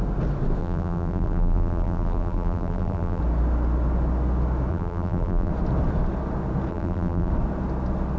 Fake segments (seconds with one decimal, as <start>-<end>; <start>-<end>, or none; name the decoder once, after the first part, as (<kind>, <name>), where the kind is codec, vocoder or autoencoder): 0.6-3.2 (vocoder, BigVGAN v2); 4.7-5.5; 6.7-7.3